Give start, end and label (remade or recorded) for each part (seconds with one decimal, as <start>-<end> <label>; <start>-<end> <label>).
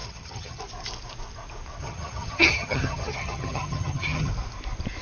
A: 0.0-0.6 remade; 0.6-1.8 recorded; 1.8-4.3 remade; 4.3-5.0 recorded